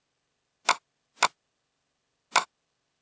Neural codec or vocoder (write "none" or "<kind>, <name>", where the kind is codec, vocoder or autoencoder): none